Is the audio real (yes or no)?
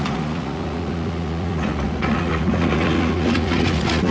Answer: no